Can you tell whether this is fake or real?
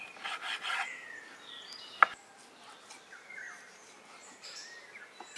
real